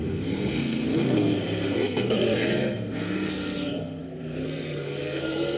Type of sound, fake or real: fake